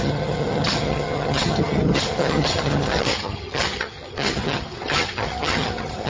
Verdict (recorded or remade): remade